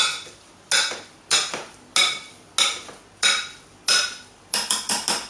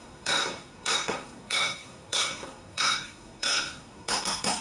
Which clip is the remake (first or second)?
second